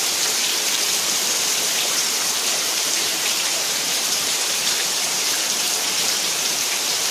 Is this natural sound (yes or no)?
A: no